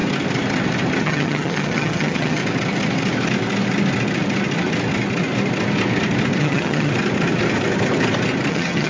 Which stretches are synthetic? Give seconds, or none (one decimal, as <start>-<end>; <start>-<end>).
1.0-2.4; 6.4-6.9; 8.5-8.9